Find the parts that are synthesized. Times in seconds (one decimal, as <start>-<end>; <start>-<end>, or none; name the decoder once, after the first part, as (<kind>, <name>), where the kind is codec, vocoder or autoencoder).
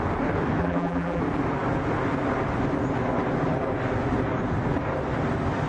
0.6-1.2 (vocoder, BigVGAN v2)